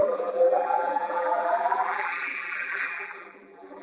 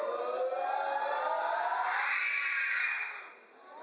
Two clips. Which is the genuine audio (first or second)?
second